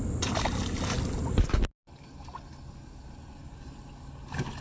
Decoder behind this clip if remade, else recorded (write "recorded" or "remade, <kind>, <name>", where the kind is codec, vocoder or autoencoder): recorded